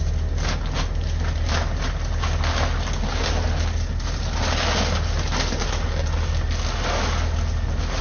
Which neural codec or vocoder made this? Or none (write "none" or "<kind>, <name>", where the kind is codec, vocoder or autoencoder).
none